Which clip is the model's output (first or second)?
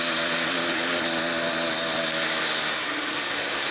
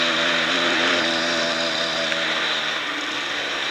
second